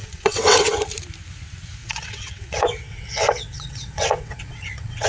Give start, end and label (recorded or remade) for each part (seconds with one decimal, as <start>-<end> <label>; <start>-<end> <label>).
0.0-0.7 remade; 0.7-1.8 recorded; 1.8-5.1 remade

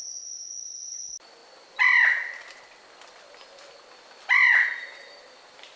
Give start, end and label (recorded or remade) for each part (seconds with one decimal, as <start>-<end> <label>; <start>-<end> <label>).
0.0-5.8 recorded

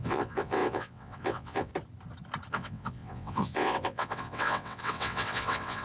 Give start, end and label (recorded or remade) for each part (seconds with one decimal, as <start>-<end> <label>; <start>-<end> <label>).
0.0-1.7 remade; 1.7-2.5 recorded; 2.5-5.8 remade